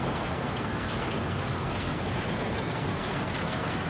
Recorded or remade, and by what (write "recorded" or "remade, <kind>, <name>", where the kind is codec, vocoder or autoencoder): remade, codec, SNAC